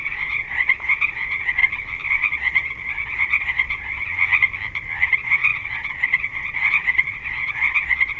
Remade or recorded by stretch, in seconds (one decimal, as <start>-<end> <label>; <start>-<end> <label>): 0.0-1.6 remade; 1.6-2.1 recorded; 2.1-4.2 remade; 4.2-5.0 recorded; 5.0-8.2 remade